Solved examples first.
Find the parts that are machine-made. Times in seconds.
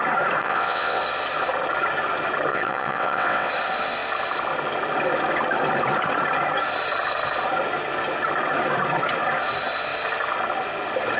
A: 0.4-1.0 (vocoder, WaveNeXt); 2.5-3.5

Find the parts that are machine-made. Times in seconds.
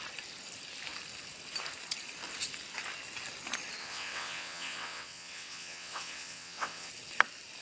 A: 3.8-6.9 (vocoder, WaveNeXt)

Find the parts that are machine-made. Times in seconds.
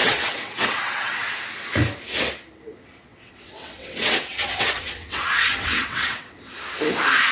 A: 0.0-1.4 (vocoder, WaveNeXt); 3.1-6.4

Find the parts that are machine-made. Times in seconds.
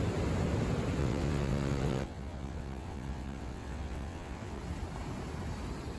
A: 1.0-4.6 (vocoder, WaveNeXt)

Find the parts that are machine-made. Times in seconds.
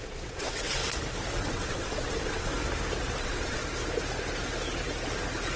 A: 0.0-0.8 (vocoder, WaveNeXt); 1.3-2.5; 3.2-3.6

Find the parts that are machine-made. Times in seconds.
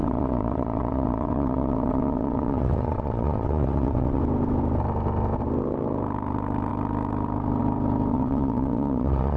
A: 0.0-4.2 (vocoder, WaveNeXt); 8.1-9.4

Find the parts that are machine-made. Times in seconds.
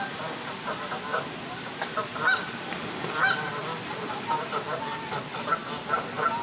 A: none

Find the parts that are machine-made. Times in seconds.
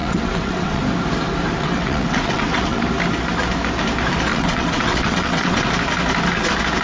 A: 0.0-0.8 (vocoder, WaveNeXt); 1.6-2.8; 4.3-5.7